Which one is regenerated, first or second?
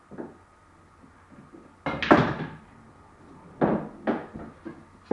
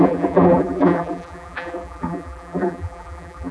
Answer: second